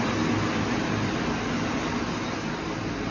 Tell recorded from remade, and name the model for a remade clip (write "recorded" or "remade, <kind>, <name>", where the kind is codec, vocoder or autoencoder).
recorded